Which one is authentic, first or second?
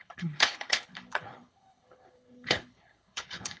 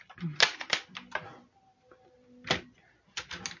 second